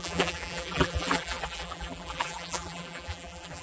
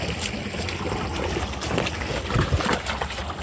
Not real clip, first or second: first